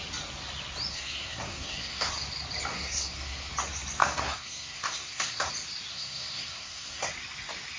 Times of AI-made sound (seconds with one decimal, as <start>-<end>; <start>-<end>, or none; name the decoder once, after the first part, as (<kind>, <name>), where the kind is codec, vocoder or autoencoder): 0.9-2.1 (codec, SNAC); 2.7-3.5; 4.0-5.5; 5.9-7.1